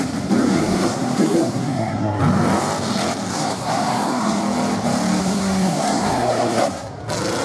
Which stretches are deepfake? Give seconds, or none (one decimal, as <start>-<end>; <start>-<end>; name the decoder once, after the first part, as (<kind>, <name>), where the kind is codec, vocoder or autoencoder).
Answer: 0.4-2.2 (codec, SNAC); 3.3-4.4; 5.2-6.9